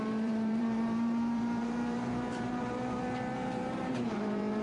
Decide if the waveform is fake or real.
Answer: fake